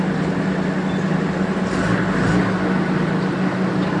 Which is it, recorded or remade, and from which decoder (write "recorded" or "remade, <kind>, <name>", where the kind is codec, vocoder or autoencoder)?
recorded